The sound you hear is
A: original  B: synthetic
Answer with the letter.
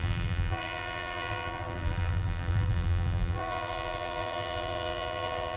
B